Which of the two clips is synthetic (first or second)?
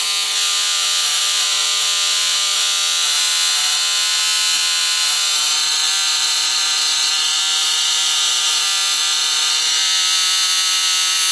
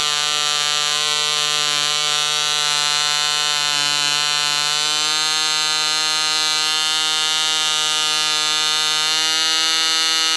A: first